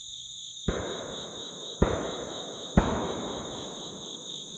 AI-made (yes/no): yes